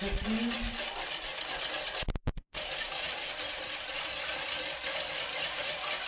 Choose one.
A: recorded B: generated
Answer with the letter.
A